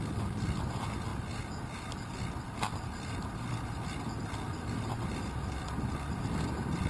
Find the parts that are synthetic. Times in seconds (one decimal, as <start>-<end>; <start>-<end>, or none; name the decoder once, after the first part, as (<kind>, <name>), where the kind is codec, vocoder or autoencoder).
none